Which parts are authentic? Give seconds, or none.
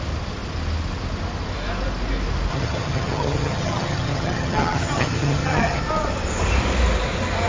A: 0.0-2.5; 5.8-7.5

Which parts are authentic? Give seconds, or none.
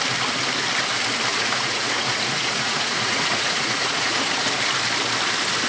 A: 0.0-1.3; 4.5-5.7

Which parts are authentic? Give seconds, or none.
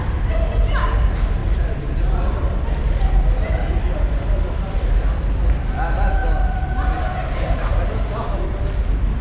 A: 0.0-9.2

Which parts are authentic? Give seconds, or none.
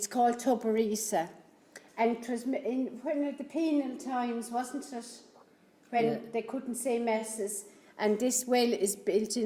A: 0.0-5.6; 6.1-9.5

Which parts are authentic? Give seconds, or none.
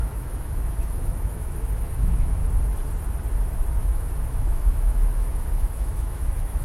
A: 2.4-3.8